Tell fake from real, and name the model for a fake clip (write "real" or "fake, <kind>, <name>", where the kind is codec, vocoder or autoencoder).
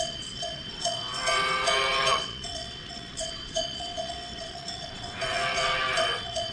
fake, vocoder, WaveNeXt